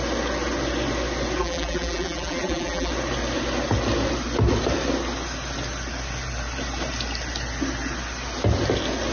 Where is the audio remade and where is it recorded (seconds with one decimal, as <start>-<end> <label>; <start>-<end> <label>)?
0.0-1.4 recorded; 1.4-2.9 remade; 2.9-9.1 recorded